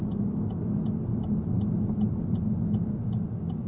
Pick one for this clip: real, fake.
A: real